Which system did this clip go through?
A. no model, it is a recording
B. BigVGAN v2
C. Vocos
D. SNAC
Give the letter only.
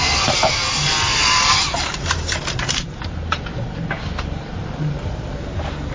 B